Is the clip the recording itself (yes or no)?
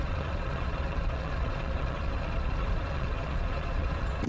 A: no